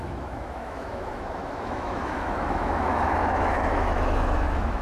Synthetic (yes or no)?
yes